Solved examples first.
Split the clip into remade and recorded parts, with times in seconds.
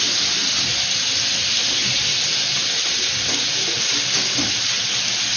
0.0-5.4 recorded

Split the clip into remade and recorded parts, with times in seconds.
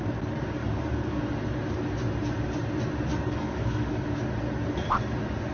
0.0-0.6 recorded; 0.6-1.2 remade; 1.2-3.1 recorded; 3.1-3.9 remade; 3.9-5.5 recorded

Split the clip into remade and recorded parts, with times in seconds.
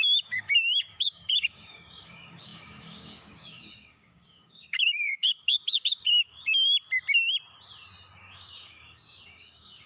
0.0-6.6 remade; 6.6-8.2 recorded; 8.2-9.9 remade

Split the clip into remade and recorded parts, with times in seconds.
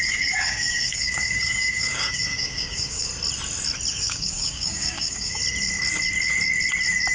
0.0-3.1 remade; 3.1-3.9 recorded; 3.9-5.4 remade; 5.4-7.1 recorded